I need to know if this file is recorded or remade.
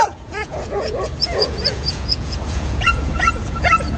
remade